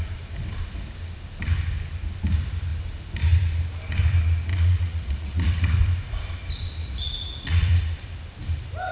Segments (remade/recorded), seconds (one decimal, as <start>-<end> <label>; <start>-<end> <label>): 0.0-4.5 recorded; 4.5-5.8 remade; 5.8-6.8 recorded; 6.8-7.8 remade; 7.8-8.9 recorded